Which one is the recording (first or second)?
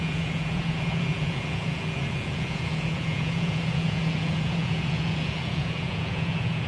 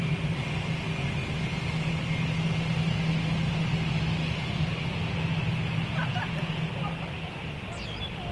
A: second